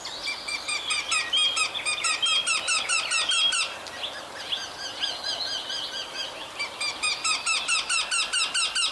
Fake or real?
real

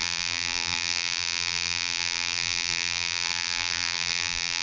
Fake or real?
fake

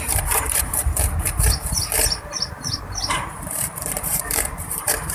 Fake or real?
fake